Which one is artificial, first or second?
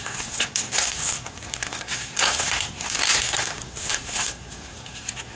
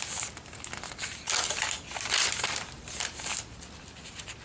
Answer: first